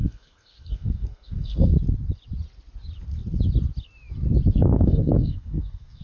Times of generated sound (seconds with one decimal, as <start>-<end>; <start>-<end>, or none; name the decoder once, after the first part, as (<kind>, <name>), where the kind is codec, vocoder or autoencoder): 0.0-1.7 (codec, SNAC); 4.5-6.0